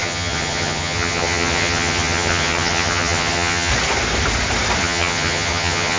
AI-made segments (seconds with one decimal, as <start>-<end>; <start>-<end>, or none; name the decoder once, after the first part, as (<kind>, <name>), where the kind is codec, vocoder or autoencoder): 0.0-3.7 (vocoder, HiFi-GAN); 4.8-6.0

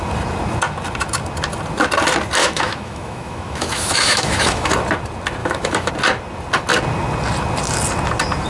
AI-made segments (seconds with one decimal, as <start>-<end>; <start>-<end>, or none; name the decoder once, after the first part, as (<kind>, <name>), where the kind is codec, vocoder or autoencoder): 2.4-4.7 (autoencoder, DAC-VAE); 5.4-5.9

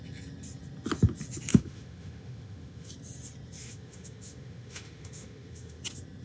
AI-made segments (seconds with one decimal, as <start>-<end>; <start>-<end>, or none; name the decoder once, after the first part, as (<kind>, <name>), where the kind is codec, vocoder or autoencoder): 1.5-2.9 (autoencoder, DAC-VAE); 3.6-5.8

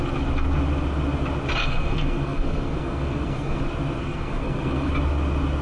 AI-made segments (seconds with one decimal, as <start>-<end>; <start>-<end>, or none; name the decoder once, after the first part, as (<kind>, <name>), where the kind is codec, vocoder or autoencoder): 1.6-3.6 (codec, SNAC); 4.0-4.9

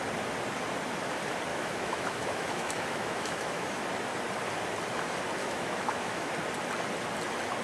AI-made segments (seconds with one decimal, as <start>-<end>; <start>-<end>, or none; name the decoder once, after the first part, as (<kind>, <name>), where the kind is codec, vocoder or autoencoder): 1.5-3.8 (autoencoder, DAC-VAE); 5.4-6.3

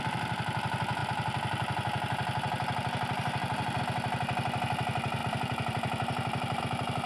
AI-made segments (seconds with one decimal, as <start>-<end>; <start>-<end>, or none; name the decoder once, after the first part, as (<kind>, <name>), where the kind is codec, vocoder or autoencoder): 5.2-6.6 (vocoder, BigVGAN v2)

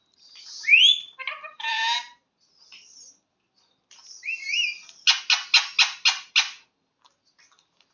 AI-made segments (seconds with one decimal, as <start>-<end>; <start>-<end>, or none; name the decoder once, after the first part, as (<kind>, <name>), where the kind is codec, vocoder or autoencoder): none